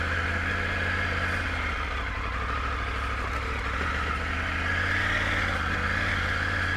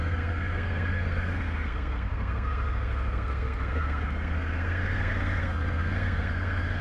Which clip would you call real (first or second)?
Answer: first